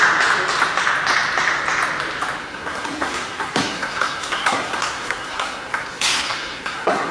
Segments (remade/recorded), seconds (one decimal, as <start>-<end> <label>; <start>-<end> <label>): 0.0-2.4 recorded; 2.4-7.1 remade

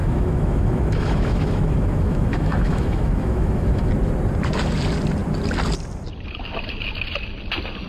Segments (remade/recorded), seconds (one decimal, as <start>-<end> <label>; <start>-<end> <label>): 0.0-3.9 remade; 3.9-7.9 recorded

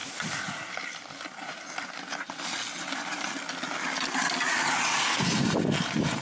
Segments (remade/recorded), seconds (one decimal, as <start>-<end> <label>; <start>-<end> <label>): 0.0-6.2 recorded

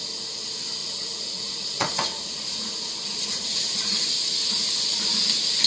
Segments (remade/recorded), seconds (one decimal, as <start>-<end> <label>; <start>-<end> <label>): 0.0-0.8 recorded; 0.8-4.2 remade; 4.2-5.7 recorded

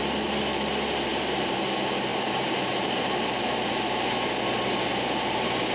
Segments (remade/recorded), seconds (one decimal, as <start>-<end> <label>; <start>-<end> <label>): 0.0-1.1 recorded; 1.1-1.6 remade; 1.6-2.1 recorded; 2.1-3.6 remade; 3.6-4.9 recorded; 4.9-5.7 remade